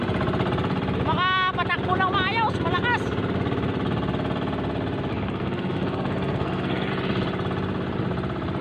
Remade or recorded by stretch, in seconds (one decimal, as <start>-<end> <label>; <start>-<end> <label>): 0.0-5.1 recorded; 5.1-6.9 remade; 6.9-8.6 recorded

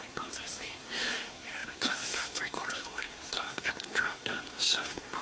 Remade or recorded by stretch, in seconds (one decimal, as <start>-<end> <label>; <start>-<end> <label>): 0.0-5.2 remade

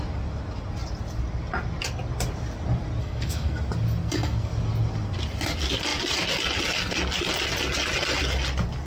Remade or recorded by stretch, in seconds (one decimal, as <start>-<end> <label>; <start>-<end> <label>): 0.0-3.0 recorded; 3.0-3.6 remade; 3.6-4.0 recorded; 4.0-4.5 remade; 4.5-8.9 recorded

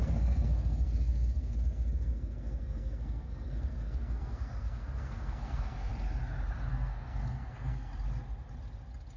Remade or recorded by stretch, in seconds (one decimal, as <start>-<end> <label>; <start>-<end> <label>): 0.0-5.9 remade; 5.9-6.7 recorded; 6.7-7.9 remade; 7.9-9.2 recorded

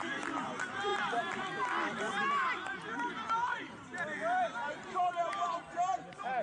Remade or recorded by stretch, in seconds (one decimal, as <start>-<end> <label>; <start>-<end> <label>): 0.0-6.4 recorded

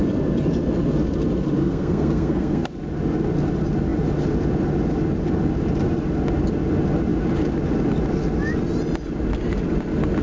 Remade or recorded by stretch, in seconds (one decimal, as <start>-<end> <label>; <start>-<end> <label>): 0.0-1.6 recorded; 1.6-2.7 remade; 2.7-10.2 recorded

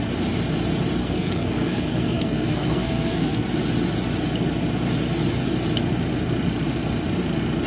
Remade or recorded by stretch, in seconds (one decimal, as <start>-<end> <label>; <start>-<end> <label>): 0.0-1.0 recorded; 1.0-3.4 remade; 3.4-7.7 recorded